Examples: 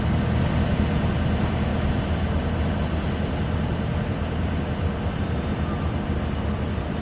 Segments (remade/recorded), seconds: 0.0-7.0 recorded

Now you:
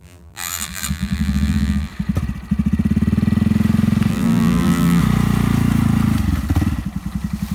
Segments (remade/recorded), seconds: 0.0-1.9 remade; 1.9-4.1 recorded; 4.1-5.0 remade; 5.0-7.5 recorded

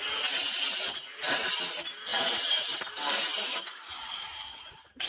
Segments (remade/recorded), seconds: 0.0-2.1 recorded; 2.1-2.9 remade; 2.9-3.3 recorded; 3.3-5.1 remade

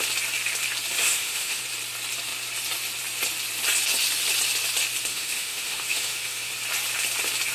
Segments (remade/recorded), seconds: 0.0-1.0 recorded; 1.0-1.6 remade; 1.6-5.1 recorded; 5.1-6.5 remade; 6.5-7.5 recorded

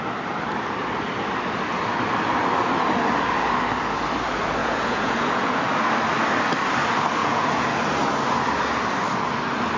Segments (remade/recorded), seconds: 0.0-4.6 recorded; 4.6-5.6 remade; 5.6-7.2 recorded; 7.2-7.8 remade; 7.8-9.8 recorded

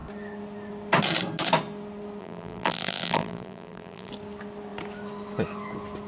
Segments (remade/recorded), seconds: 0.0-2.2 recorded; 2.2-4.1 remade; 4.1-6.1 recorded

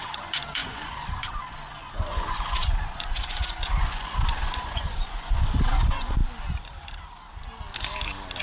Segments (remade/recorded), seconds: 0.0-6.2 remade; 6.2-8.4 recorded